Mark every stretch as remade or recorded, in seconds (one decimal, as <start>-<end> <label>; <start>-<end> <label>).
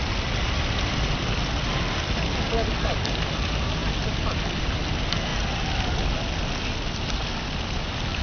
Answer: 0.0-8.2 recorded